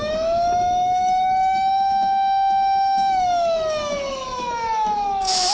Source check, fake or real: fake